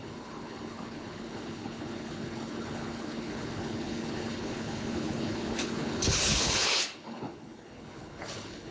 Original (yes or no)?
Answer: no